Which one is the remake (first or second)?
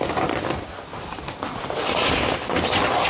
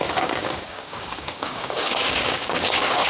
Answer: second